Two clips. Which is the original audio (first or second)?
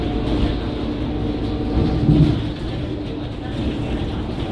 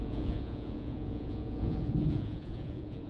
first